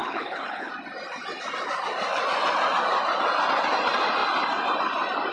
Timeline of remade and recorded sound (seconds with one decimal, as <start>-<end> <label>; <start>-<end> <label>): 0.0-0.7 remade; 0.7-5.3 recorded